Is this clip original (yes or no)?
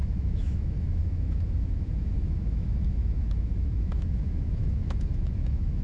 no